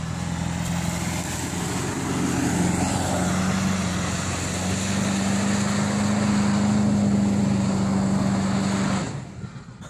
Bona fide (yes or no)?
yes